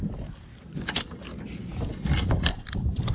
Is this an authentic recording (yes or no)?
yes